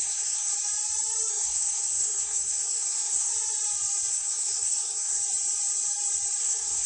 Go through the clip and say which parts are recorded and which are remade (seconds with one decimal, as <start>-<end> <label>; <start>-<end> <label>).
0.0-0.5 remade; 0.5-1.3 recorded; 1.3-3.3 remade; 3.3-4.1 recorded; 4.1-5.2 remade; 5.2-6.4 recorded; 6.4-6.9 remade